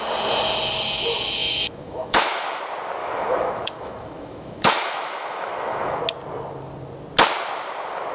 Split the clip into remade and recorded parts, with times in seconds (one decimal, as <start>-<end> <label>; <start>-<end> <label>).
0.0-1.4 recorded; 1.4-2.6 remade; 2.6-3.0 recorded; 3.0-6.0 remade; 6.0-8.1 recorded